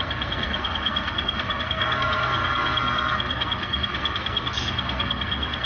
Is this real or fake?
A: fake